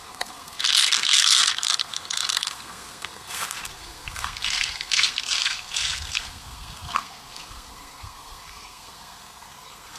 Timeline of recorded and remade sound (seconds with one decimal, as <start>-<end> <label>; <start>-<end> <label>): 0.0-10.0 remade